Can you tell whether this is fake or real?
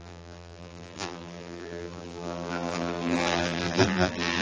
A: fake